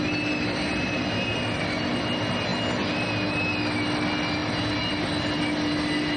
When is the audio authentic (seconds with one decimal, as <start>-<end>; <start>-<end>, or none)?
0.0-6.2